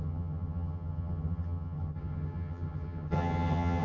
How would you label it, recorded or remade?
remade